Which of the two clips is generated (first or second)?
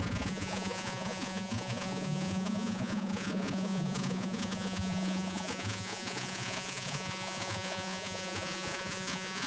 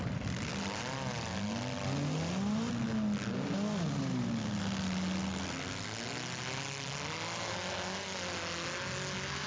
first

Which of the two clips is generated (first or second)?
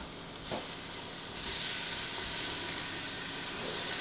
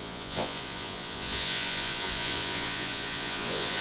second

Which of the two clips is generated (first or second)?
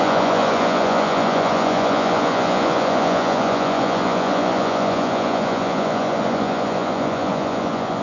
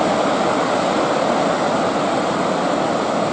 first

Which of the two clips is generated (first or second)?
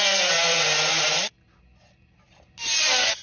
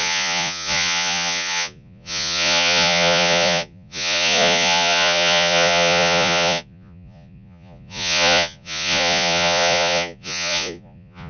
second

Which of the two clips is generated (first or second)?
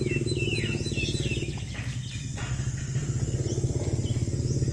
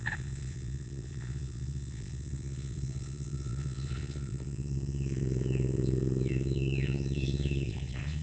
second